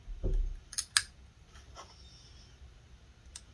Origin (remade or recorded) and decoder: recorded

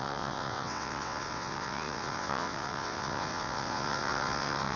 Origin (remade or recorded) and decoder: remade, vocoder, WaveNeXt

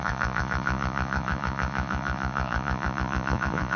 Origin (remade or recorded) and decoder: remade, vocoder, Vocos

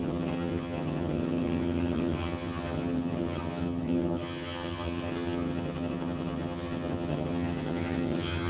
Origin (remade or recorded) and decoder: remade, vocoder, HiFi-GAN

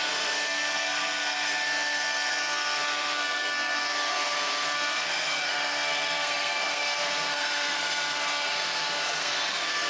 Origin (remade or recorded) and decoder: remade, codec, SNAC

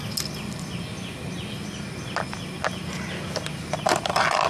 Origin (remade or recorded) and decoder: recorded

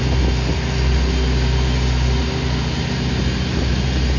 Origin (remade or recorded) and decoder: recorded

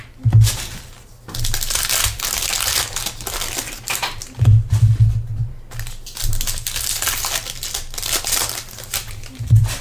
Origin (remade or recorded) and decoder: recorded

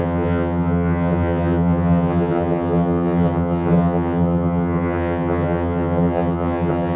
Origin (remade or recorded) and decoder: remade, vocoder, HiFi-GAN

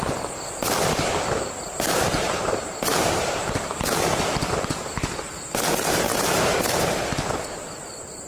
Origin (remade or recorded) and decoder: remade, vocoder, BigVGAN v2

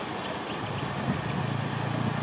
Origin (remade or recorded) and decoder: recorded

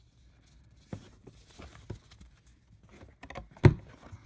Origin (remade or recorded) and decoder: recorded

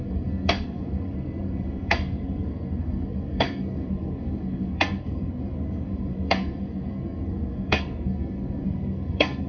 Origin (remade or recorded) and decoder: remade, codec, SNAC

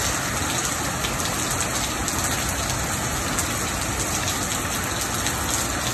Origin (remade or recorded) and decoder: recorded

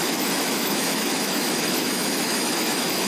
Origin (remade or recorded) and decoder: remade, autoencoder, DAC-VAE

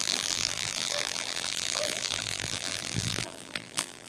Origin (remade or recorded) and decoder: remade, vocoder, BigVGAN v2